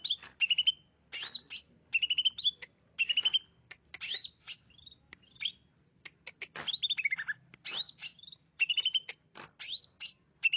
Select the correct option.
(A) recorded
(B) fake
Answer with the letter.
A